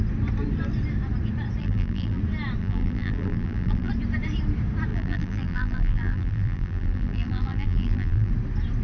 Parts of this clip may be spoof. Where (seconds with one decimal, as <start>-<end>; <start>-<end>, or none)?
1.6-2.2; 2.6-3.9; 4.9-8.3